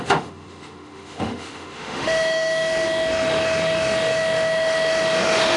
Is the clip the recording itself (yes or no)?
no